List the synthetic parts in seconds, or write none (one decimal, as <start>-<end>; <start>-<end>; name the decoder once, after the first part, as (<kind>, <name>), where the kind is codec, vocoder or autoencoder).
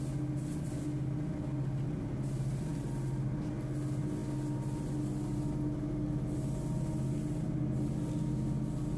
none